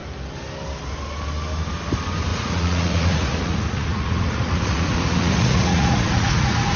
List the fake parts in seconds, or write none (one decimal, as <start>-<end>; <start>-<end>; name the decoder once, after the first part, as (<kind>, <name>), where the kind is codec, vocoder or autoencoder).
2.3-6.8 (vocoder, Vocos)